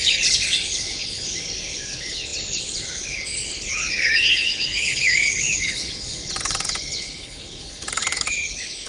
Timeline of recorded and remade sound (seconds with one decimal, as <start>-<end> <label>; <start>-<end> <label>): 0.0-8.9 remade